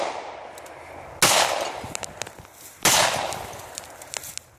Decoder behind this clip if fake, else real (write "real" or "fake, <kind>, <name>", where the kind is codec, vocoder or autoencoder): real